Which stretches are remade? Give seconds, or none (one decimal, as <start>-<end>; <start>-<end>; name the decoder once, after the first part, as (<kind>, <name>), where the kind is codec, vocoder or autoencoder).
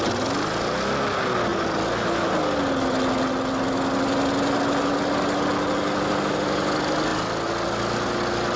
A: none